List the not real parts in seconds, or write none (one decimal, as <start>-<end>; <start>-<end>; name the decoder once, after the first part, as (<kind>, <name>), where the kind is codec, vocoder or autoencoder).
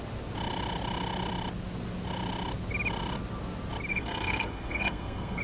3.9-5.4 (codec, SNAC)